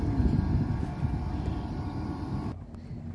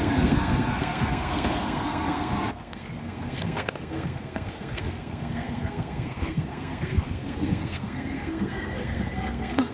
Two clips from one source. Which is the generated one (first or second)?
second